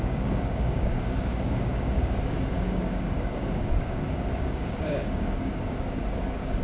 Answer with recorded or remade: remade